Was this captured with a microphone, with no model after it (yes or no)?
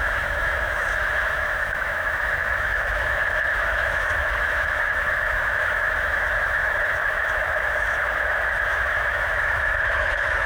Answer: no